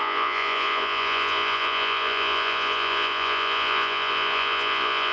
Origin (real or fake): fake